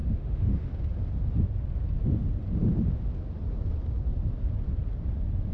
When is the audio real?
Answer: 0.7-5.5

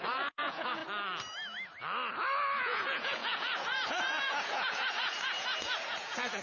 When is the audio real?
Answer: 0.8-2.6

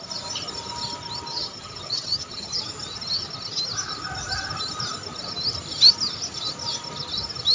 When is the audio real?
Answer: 0.0-1.3; 2.6-7.5

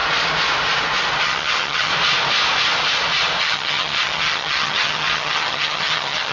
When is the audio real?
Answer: 0.0-1.2; 1.9-3.4

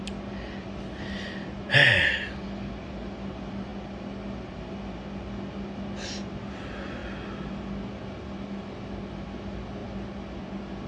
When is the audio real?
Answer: 0.0-10.9

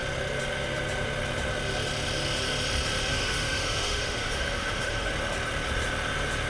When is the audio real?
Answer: 0.0-3.1; 5.1-6.5

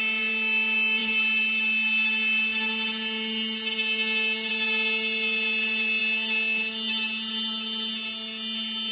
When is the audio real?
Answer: 0.0-8.9

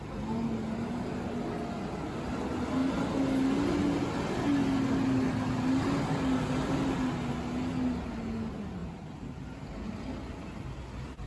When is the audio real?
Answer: 0.0-11.3